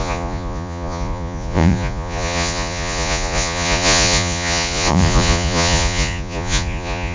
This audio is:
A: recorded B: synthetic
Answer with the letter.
B